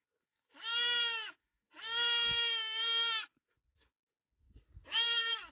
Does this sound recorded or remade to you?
remade